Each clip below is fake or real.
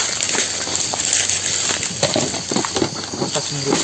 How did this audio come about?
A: real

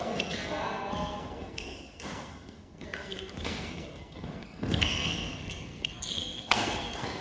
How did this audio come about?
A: fake